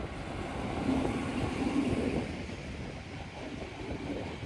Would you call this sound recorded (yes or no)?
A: no